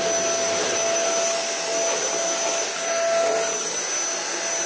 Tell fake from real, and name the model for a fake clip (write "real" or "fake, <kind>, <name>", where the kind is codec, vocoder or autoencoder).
real